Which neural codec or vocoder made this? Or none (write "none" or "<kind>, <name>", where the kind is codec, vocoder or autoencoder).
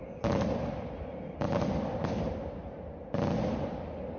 none